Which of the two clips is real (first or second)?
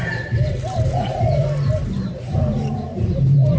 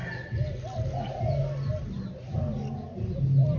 second